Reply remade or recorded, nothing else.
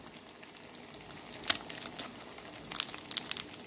recorded